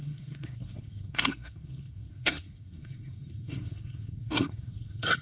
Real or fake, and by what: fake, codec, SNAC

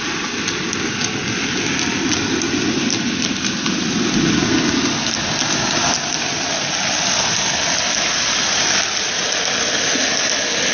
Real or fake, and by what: real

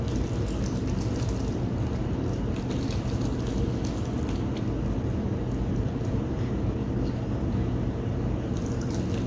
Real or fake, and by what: real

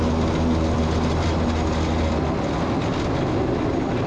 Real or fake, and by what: real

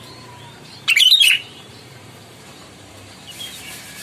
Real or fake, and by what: fake, vocoder, BigVGAN v2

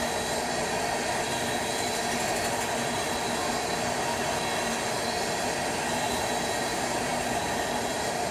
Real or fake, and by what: real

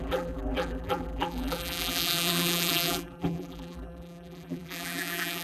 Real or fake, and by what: fake, vocoder, BigVGAN v2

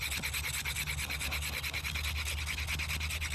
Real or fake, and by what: real